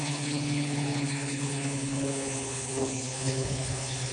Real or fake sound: fake